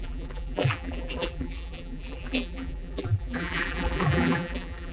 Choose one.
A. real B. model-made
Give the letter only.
B